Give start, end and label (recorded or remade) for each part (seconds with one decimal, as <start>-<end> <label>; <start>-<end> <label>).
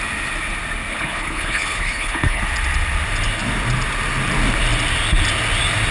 0.0-0.9 recorded; 0.9-2.4 remade; 2.4-5.9 recorded